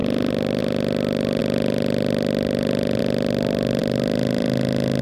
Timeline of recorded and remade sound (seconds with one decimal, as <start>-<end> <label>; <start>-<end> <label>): 0.0-1.4 recorded; 1.4-3.0 remade; 3.0-5.0 recorded